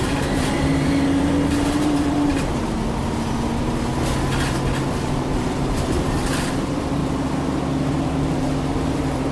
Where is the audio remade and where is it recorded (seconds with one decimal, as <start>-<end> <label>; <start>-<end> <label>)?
0.0-3.0 remade; 3.0-4.9 recorded; 4.9-7.0 remade; 7.0-7.9 recorded; 7.9-9.3 remade